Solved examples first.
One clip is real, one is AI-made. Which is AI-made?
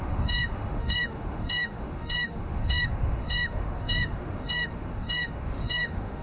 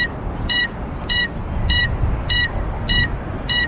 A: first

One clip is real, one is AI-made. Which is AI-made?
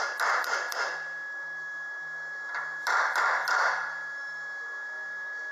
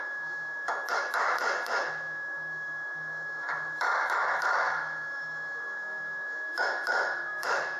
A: second